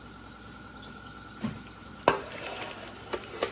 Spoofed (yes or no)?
no